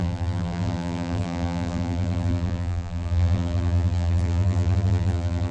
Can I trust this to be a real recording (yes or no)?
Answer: no